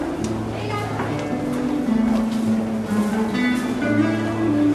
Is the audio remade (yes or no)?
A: no